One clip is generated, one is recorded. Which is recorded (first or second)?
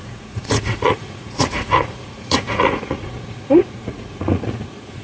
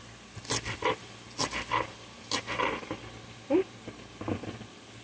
second